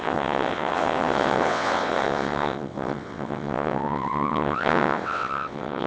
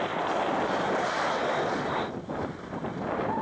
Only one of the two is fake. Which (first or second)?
first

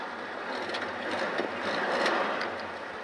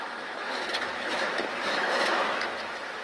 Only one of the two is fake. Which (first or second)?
second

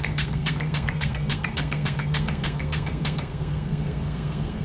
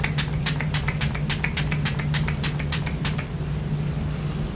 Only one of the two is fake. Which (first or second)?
first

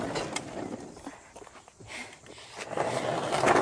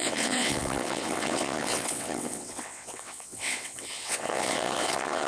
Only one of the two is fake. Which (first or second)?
second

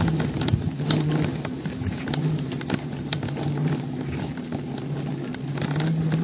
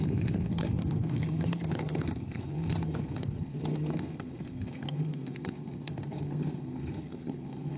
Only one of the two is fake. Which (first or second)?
second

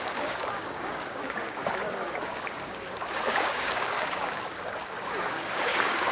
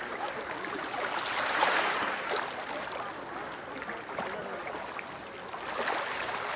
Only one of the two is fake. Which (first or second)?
first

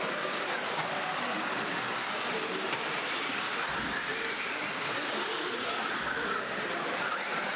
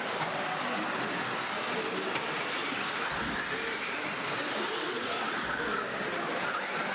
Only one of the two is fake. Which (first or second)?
first